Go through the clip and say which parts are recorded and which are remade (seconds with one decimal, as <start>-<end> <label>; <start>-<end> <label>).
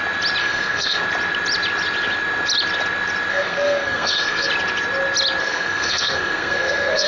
0.0-0.4 recorded; 0.4-1.0 remade; 1.0-3.3 recorded; 3.3-4.5 remade; 4.5-5.4 recorded; 5.4-7.1 remade